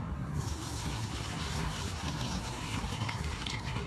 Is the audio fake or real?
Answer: fake